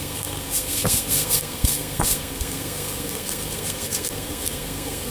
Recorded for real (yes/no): no